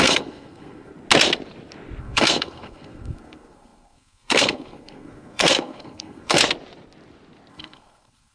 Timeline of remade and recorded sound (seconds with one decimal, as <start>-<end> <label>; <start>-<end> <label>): 0.0-0.9 remade; 0.9-2.0 recorded; 2.0-6.4 remade; 6.4-7.5 recorded; 7.5-8.3 remade